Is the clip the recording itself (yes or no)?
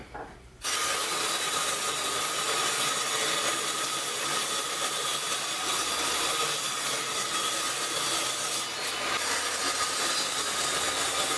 yes